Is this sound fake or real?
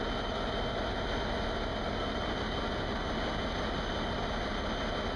real